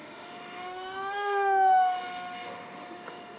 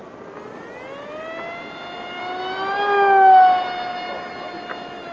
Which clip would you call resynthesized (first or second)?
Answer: first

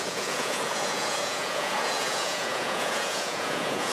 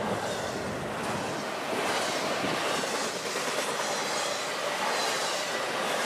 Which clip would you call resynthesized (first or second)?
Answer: first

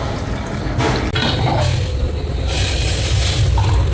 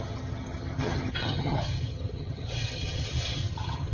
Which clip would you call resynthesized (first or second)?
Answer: second